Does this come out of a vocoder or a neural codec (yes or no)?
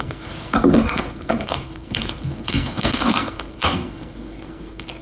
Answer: yes